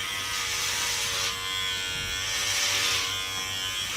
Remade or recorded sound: recorded